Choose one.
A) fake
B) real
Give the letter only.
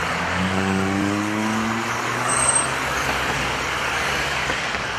A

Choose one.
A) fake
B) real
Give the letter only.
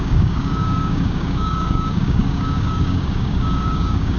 A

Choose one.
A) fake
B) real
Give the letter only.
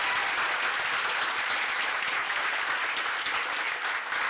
B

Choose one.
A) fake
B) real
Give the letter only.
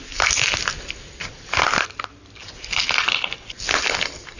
B